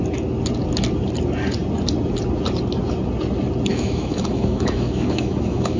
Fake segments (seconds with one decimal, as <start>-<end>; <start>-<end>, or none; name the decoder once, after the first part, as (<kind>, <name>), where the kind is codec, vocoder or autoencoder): 3.7-5.8 (autoencoder, DAC-VAE)